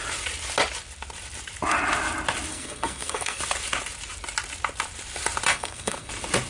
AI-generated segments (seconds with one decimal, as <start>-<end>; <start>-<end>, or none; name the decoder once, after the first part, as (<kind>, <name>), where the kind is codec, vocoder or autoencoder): 2.5-3.4 (codec, SNAC); 5.5-6.1